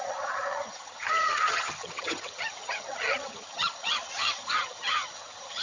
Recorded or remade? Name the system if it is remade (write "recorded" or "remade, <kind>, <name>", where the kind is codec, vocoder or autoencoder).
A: remade, vocoder, HiFi-GAN